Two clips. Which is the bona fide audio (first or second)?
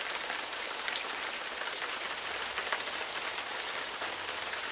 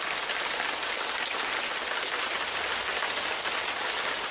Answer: second